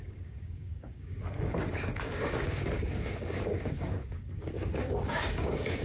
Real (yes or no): no